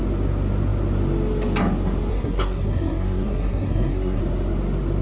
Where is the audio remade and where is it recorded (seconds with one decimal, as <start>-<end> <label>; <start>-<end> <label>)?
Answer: 0.0-2.1 recorded; 2.1-4.2 remade; 4.2-5.0 recorded